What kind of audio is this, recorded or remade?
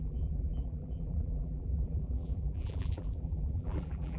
remade